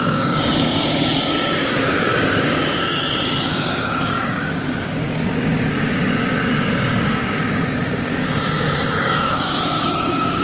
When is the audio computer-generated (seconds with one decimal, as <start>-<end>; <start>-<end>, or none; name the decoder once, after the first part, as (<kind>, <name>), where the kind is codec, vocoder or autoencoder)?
0.0-10.4 (codec, DAC)